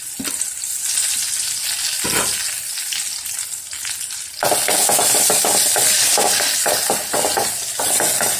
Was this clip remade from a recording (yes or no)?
no